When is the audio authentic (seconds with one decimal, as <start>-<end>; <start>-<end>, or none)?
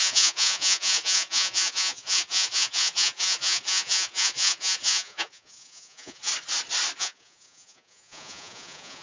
6.3-7.0